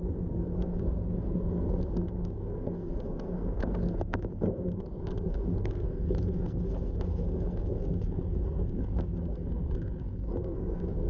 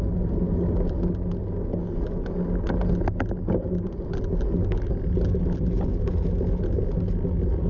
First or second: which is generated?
first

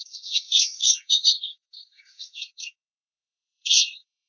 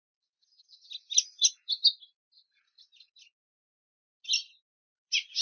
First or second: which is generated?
first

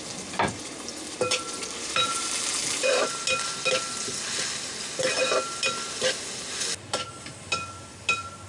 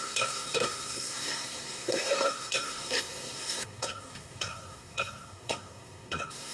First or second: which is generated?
second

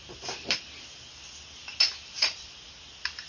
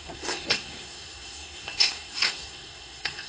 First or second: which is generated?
second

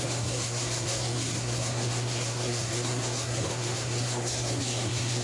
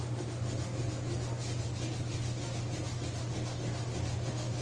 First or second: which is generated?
first